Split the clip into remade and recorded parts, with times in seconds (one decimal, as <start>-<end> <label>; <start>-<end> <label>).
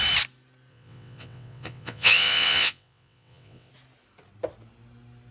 0.0-0.7 recorded; 0.7-3.7 remade; 3.7-5.3 recorded